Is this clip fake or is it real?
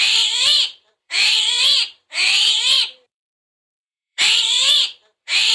fake